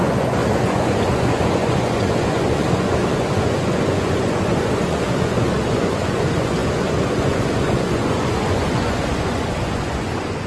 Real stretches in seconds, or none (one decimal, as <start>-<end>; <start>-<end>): none